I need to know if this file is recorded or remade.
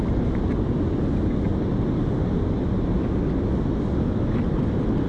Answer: recorded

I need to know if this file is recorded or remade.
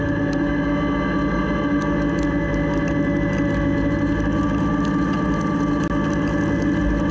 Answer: recorded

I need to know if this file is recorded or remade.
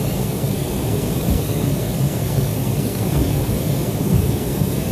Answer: remade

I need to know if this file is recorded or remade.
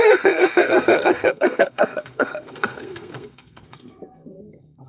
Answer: remade